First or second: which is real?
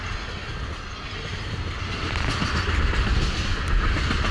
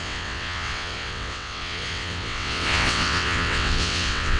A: first